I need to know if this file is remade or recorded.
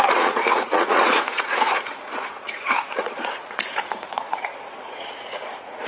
remade